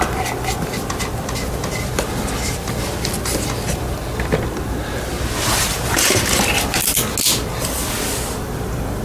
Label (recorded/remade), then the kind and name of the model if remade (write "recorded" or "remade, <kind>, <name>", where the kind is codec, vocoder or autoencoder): recorded